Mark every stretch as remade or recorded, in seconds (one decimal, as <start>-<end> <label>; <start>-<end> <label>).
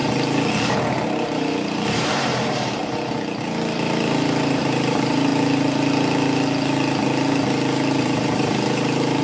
0.0-0.8 recorded; 0.8-2.8 remade; 2.8-3.4 recorded; 3.4-5.3 remade; 5.3-8.0 recorded; 8.0-9.2 remade